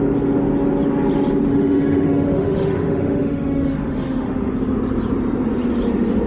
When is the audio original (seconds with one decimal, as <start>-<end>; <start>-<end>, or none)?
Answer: 0.0-1.5; 4.5-6.3